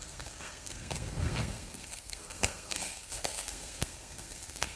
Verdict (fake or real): fake